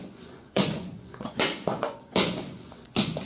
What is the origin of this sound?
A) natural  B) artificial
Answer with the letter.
B